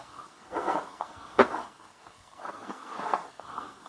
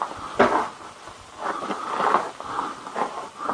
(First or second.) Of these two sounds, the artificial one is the first